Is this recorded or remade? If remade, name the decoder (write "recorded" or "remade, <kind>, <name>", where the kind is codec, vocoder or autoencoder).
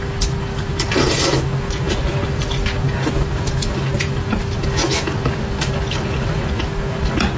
recorded